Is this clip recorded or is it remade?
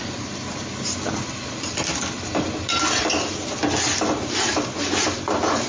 recorded